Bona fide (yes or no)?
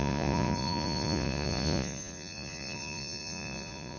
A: no